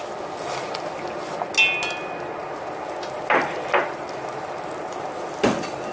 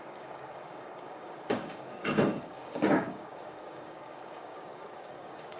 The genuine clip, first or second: first